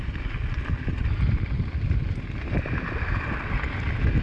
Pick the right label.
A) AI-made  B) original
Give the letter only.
B